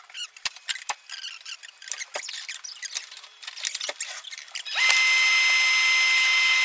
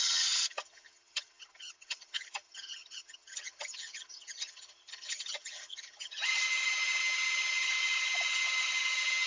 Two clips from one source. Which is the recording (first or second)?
first